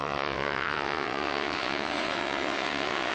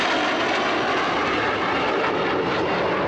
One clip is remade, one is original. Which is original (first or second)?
second